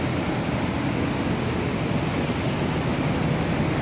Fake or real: real